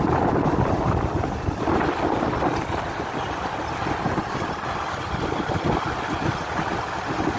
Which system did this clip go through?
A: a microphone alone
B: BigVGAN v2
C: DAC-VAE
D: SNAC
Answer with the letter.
A